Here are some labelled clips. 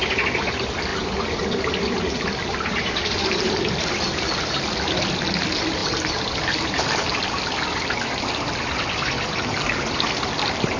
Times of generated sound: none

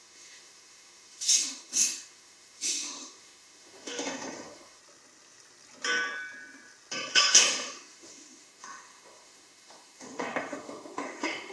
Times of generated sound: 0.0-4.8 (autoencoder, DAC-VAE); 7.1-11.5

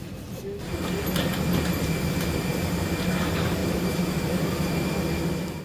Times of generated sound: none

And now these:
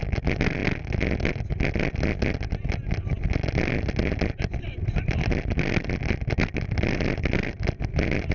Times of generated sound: none

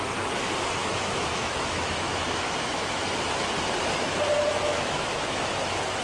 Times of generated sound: 0.8-3.0 (autoencoder, DAC-VAE); 4.5-5.5